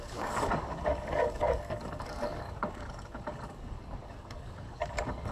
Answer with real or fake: fake